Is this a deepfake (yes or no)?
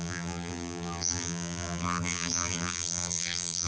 yes